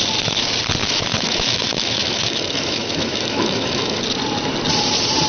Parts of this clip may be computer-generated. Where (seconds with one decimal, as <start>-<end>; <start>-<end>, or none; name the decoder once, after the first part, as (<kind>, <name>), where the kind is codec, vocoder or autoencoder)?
0.8-4.0 (autoencoder, DAC-VAE)